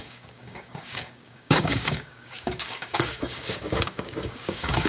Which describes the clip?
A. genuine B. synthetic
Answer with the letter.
B